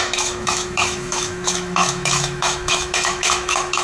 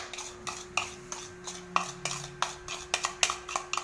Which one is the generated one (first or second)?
first